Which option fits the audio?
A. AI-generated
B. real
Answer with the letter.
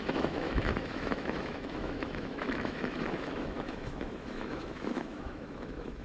A